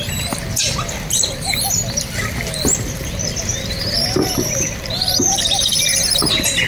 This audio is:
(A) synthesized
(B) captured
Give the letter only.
B